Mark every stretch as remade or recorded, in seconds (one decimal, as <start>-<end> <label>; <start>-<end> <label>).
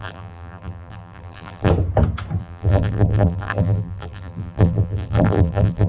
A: 0.0-1.7 remade; 1.7-2.4 recorded; 2.4-5.9 remade